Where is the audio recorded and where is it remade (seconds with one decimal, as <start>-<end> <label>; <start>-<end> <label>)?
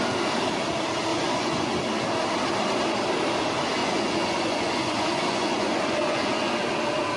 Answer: 0.0-1.1 recorded; 1.1-1.7 remade; 1.7-3.8 recorded; 3.8-6.5 remade; 6.5-7.2 recorded